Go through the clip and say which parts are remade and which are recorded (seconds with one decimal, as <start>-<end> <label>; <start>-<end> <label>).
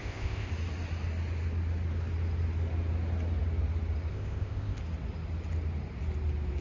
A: 0.0-0.5 remade; 0.5-4.1 recorded; 4.1-4.8 remade; 4.8-6.6 recorded